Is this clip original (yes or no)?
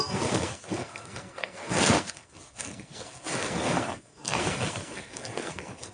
no